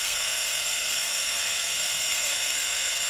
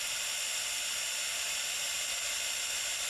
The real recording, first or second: second